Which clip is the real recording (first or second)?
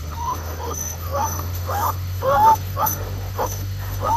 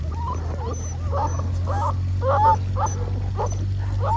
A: second